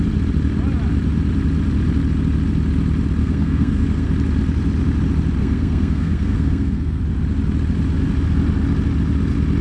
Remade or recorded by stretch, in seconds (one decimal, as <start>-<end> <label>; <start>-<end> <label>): 0.0-3.2 recorded; 3.2-4.1 remade; 4.1-5.4 recorded; 5.4-7.0 remade; 7.0-9.6 recorded